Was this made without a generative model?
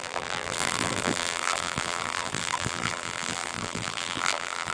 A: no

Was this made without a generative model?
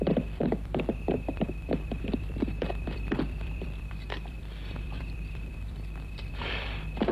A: no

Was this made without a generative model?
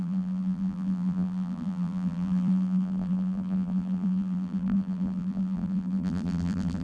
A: no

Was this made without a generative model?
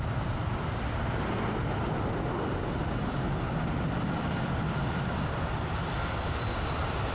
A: yes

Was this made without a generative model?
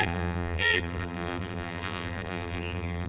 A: no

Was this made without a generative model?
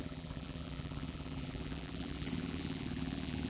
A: no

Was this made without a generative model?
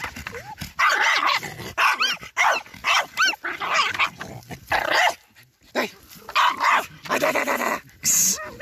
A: yes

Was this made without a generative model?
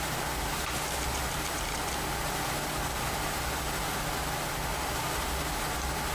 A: yes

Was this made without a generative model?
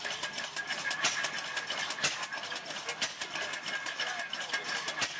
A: yes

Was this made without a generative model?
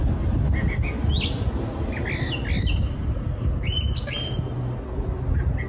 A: yes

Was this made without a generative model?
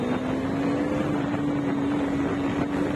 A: yes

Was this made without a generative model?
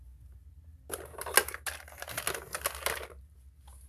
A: yes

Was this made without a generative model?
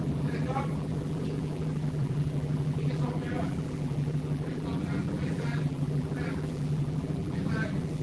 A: no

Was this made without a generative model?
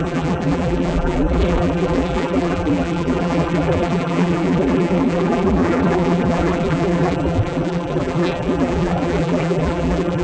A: no